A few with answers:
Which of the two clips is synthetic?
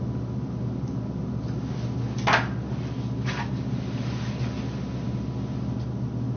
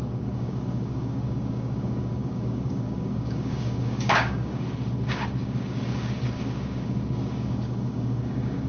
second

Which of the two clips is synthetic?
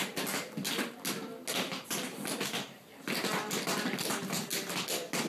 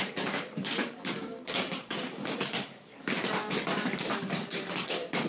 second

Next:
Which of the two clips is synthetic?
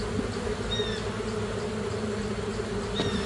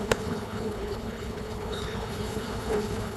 second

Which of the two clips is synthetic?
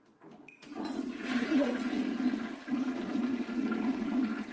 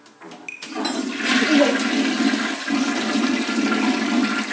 first